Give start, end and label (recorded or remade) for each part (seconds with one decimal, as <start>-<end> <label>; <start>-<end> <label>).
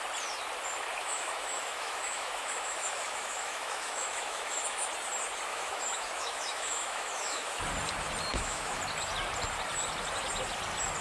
0.0-1.0 recorded; 1.0-4.9 remade; 4.9-5.5 recorded; 5.5-7.6 remade; 7.6-8.3 recorded; 8.3-8.8 remade; 8.8-11.0 recorded